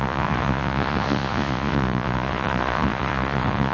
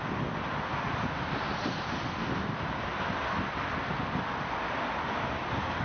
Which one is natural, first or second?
second